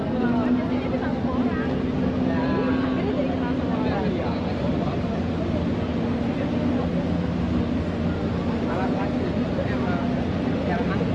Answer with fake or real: real